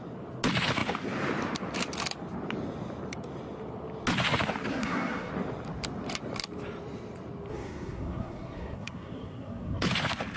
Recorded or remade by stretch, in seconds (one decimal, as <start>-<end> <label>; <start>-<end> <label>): 0.0-4.7 recorded; 4.7-5.3 remade; 5.3-7.5 recorded; 7.5-9.9 remade; 9.9-10.4 recorded